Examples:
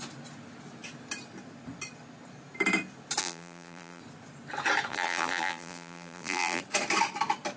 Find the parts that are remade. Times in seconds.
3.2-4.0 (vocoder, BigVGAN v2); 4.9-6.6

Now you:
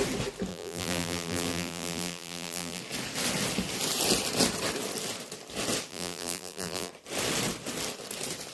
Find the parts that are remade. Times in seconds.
0.5-2.8 (vocoder, BigVGAN v2); 5.9-6.9

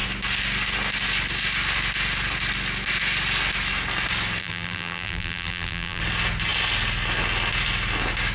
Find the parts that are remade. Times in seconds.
4.4-6.0 (vocoder, BigVGAN v2)

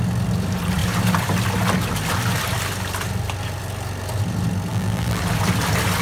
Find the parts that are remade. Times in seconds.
4.7-5.2 (vocoder, BigVGAN v2)